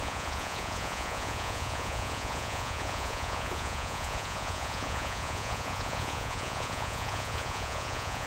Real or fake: fake